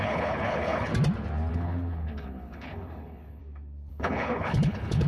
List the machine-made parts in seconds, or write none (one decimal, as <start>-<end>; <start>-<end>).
0.0-0.9; 1.5-3.4; 3.9-5.1